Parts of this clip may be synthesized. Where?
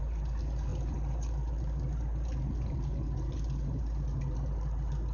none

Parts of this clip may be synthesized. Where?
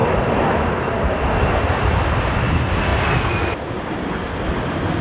none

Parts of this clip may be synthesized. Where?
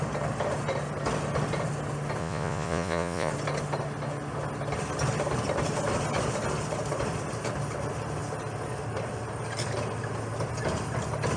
2.2-3.3 (vocoder, Vocos)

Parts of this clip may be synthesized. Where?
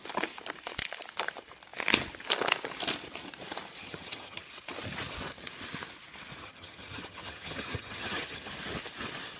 3.8-4.4 (vocoder, HiFi-GAN); 6.4-8.5